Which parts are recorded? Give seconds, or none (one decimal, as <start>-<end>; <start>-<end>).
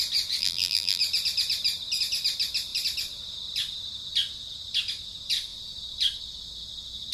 0.0-0.4; 1.0-7.1